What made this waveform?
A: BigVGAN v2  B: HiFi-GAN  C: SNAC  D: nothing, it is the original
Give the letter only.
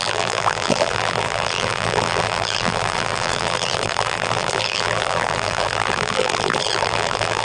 A